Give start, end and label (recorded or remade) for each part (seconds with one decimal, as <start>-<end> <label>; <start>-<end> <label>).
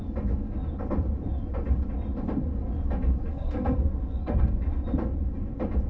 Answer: 0.0-3.3 recorded; 3.3-4.7 remade; 4.7-5.9 recorded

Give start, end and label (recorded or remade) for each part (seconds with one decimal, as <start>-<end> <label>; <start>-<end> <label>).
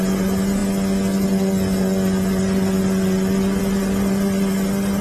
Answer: 0.0-5.0 recorded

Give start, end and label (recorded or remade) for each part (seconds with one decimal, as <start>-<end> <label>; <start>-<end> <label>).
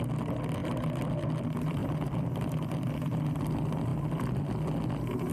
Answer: 0.0-1.8 recorded; 1.8-3.5 remade; 3.5-5.3 recorded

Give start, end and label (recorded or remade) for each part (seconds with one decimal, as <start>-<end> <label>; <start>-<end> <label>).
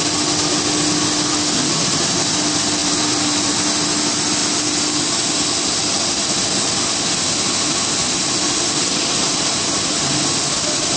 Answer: 0.0-2.8 recorded; 2.8-3.5 remade; 3.5-11.0 recorded